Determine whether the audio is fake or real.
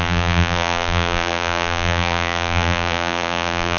fake